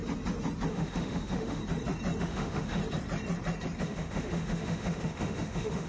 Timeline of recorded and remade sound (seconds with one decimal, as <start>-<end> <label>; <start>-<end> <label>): 0.0-0.7 recorded; 0.7-1.6 remade; 1.6-2.2 recorded; 2.2-2.8 remade; 2.8-3.8 recorded; 3.8-5.9 remade

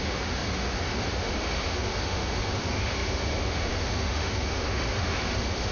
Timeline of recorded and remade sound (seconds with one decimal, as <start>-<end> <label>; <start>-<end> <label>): 0.0-5.7 remade

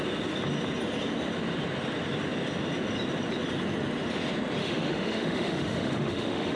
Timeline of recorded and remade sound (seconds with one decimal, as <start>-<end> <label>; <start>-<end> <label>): 0.0-4.6 recorded; 4.6-6.6 remade

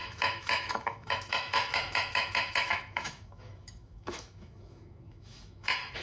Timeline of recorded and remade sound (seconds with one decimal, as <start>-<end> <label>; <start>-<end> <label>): 0.0-6.0 remade

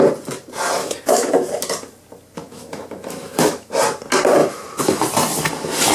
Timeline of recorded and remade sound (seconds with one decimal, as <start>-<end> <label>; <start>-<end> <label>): 0.0-0.8 recorded; 0.8-1.3 remade; 1.3-2.4 recorded; 2.4-3.7 remade; 3.7-4.4 recorded; 4.4-5.0 remade; 5.0-5.9 recorded

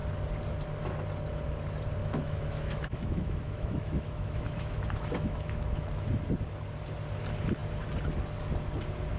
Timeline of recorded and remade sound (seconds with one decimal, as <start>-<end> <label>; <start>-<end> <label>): 0.0-2.0 recorded; 2.0-6.1 remade; 6.1-9.2 recorded

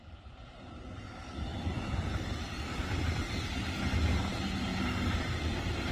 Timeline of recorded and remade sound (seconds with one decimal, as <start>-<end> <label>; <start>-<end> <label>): 0.0-5.9 recorded